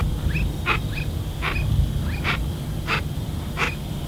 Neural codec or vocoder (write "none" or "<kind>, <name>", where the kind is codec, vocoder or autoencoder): none